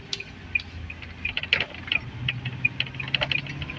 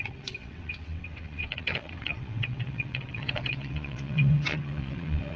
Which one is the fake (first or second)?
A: second